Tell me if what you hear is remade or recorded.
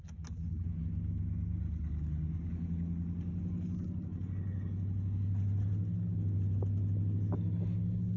recorded